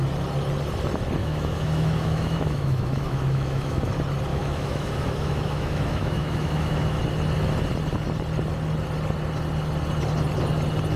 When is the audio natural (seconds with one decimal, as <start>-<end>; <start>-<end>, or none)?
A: 0.0-1.2; 3.9-4.3; 7.0-11.0